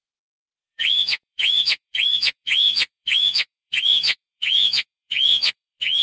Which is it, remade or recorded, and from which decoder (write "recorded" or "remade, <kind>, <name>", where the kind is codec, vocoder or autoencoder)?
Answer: remade, vocoder, Vocos